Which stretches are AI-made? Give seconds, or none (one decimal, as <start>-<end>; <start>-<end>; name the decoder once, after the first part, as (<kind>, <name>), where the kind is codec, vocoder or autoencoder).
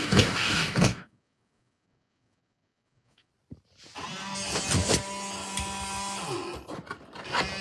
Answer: 0.0-3.3 (codec, DAC)